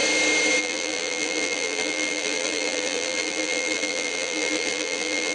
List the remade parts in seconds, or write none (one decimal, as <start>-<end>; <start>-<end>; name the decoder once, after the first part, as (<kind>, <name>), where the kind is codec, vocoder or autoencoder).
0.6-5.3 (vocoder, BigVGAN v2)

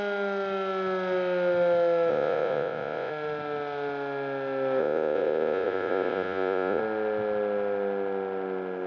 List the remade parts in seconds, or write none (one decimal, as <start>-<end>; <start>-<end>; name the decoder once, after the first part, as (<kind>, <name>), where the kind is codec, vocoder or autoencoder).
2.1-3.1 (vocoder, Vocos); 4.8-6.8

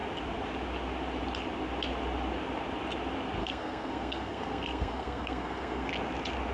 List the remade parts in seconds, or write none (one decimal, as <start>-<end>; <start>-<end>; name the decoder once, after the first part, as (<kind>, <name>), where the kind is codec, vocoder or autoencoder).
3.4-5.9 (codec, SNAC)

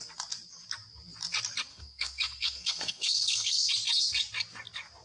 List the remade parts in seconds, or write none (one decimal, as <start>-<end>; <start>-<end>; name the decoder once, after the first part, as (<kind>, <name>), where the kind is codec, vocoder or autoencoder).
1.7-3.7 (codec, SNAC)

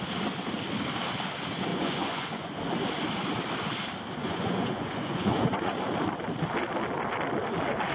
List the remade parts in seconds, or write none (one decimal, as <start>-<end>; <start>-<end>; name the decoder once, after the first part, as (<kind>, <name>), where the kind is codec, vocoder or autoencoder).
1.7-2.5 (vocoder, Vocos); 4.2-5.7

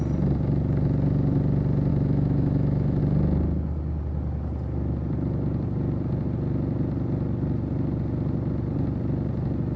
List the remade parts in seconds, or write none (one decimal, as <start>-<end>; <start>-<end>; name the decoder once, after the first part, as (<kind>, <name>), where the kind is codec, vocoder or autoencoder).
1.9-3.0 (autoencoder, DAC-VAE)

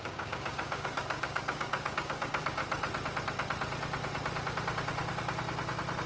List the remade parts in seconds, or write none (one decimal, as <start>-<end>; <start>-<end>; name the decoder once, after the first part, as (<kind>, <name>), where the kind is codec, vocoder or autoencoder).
0.0-2.6 (codec, DAC)